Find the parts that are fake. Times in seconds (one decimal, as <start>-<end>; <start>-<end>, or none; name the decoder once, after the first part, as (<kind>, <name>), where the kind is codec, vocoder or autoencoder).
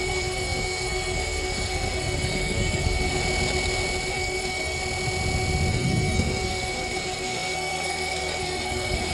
0.0-3.2 (codec, SNAC); 4.1-4.8; 5.7-9.1